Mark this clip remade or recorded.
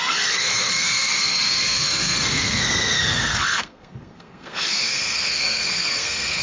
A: remade